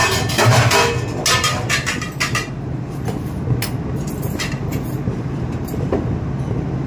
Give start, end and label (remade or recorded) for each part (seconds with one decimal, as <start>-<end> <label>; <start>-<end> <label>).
0.0-4.7 recorded; 4.7-6.0 remade; 6.0-6.9 recorded